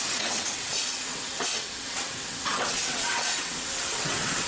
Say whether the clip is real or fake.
fake